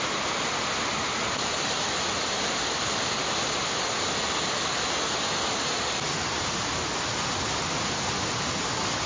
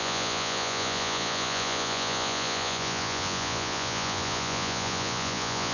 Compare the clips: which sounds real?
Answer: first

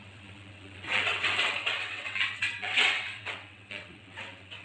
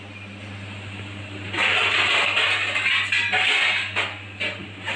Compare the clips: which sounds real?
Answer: second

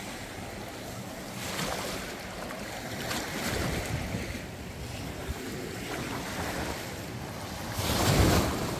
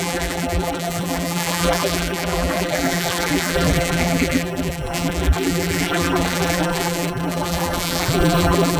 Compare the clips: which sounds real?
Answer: first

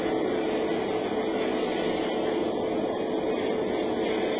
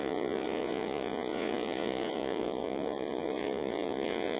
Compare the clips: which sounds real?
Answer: first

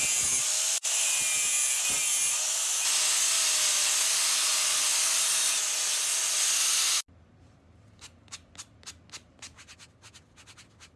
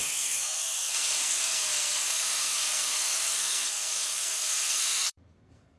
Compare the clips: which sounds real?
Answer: first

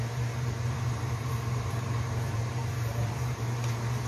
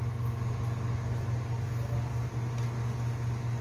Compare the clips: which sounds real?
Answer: second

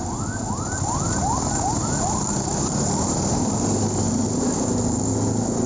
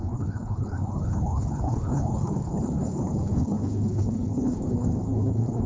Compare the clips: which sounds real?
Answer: first